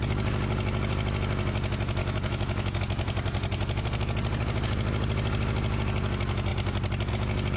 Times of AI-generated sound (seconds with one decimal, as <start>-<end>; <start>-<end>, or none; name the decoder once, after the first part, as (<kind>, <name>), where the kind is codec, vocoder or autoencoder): 2.0-2.8 (autoencoder, DAC-VAE)